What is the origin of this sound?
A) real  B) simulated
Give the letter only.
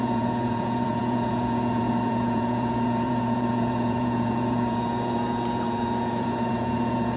B